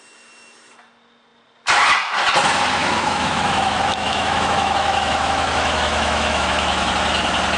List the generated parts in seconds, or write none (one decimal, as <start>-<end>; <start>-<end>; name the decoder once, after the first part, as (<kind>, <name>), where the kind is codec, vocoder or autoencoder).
2.8-6.9 (autoencoder, DAC-VAE)